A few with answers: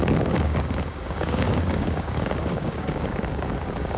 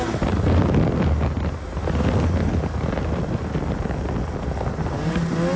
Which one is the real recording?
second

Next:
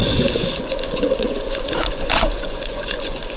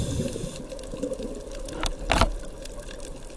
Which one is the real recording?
second